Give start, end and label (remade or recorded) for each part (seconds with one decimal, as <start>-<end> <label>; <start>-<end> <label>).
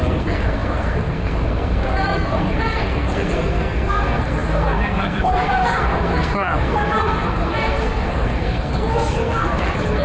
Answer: 0.0-10.0 remade